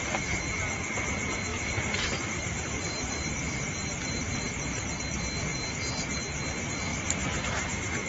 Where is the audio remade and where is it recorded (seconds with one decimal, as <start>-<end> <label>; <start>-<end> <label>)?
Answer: 0.0-1.5 recorded; 1.5-5.0 remade; 5.0-6.9 recorded; 6.9-8.1 remade